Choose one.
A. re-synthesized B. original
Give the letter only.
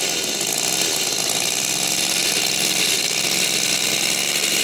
B